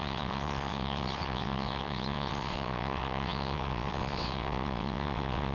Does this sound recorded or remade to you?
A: remade